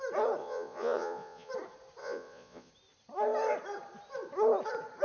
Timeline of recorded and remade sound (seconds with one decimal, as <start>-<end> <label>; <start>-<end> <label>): 0.0-0.4 recorded; 0.4-1.5 remade; 1.5-2.0 recorded; 2.0-2.7 remade; 2.7-5.0 recorded